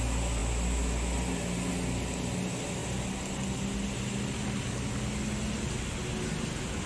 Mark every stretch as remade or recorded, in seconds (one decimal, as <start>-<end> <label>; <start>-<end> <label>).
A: 0.0-6.9 recorded